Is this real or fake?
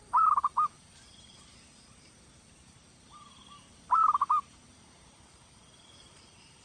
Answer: fake